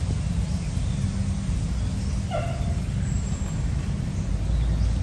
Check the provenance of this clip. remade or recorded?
recorded